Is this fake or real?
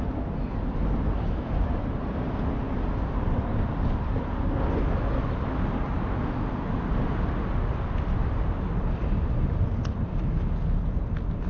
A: real